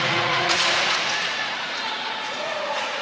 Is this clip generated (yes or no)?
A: yes